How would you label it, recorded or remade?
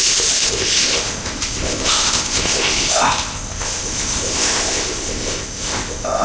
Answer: remade